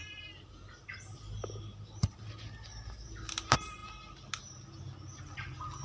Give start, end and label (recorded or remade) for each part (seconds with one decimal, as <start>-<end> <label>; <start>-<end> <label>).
0.0-5.8 recorded

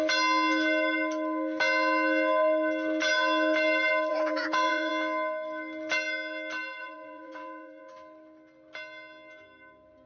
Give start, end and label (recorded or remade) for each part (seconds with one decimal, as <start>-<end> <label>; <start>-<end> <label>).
0.0-4.1 recorded; 4.1-4.9 remade; 4.9-6.8 recorded; 6.8-7.9 remade; 7.9-10.1 recorded

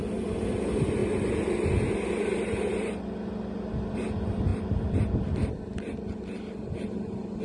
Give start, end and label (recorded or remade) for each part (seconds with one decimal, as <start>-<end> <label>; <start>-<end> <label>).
0.0-7.4 recorded

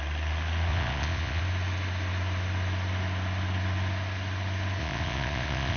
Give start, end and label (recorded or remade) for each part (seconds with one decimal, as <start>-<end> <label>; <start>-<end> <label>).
0.0-0.7 recorded; 0.7-1.4 remade; 1.4-4.8 recorded; 4.8-5.8 remade

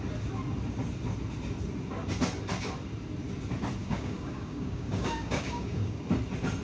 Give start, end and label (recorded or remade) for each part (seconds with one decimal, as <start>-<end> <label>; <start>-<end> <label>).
0.0-3.8 recorded; 3.8-6.0 remade; 6.0-6.6 recorded

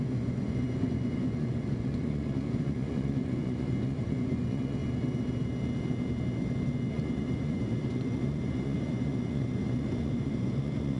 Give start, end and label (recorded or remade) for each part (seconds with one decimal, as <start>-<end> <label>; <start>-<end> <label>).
0.0-4.8 remade; 4.8-6.9 recorded; 6.9-11.0 remade